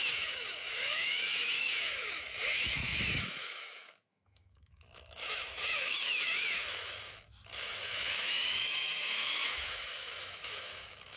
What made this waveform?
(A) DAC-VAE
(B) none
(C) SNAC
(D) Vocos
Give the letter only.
A